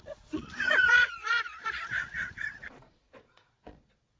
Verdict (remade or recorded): remade